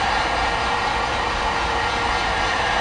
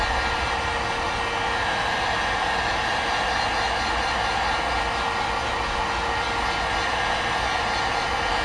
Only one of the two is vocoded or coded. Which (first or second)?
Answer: first